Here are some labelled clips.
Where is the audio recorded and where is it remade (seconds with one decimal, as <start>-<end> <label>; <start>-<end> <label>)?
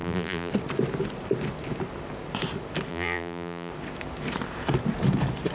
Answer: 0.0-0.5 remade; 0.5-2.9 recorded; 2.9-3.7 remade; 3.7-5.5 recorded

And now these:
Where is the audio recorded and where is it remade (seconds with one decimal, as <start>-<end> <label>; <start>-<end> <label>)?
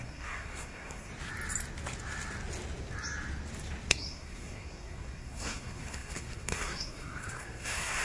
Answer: 0.0-1.1 remade; 1.1-3.9 recorded; 3.9-8.0 remade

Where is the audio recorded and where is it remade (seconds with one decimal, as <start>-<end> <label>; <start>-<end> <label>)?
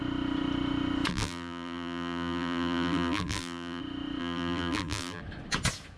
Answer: 0.0-1.1 recorded; 1.1-3.8 remade; 3.8-4.2 recorded; 4.2-5.2 remade; 5.2-6.0 recorded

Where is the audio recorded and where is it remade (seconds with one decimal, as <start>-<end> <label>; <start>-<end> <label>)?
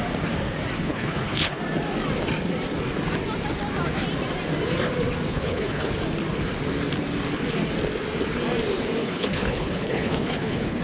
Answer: 0.0-0.8 recorded; 0.8-1.6 remade; 1.6-5.3 recorded; 5.3-5.9 remade; 5.9-9.0 recorded; 9.0-10.8 remade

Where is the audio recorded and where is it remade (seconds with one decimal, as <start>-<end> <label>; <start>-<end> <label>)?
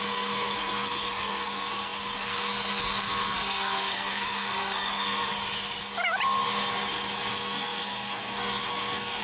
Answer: 0.0-5.3 remade; 5.3-7.3 recorded; 7.3-9.2 remade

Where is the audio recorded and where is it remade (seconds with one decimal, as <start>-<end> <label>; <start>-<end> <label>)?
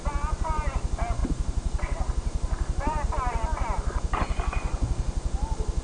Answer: 0.0-1.2 recorded; 1.2-3.1 remade; 3.1-5.8 recorded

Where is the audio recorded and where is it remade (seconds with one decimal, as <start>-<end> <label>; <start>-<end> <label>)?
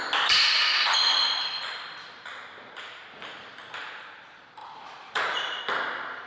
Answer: 0.0-4.6 recorded; 4.6-5.6 remade; 5.6-6.3 recorded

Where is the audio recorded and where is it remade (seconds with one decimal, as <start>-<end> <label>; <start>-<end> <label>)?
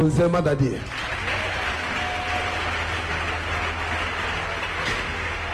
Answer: 0.0-4.9 recorded; 4.9-5.5 remade